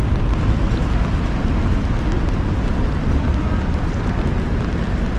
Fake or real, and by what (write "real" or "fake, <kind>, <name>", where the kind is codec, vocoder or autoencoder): real